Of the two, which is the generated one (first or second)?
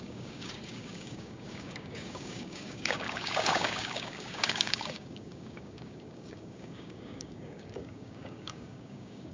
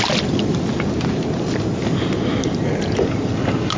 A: first